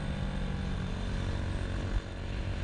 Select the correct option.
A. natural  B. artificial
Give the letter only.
A